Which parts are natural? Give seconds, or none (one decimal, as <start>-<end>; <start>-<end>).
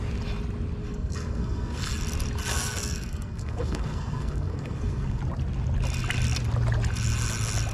0.0-0.8; 1.8-2.5; 5.2-7.7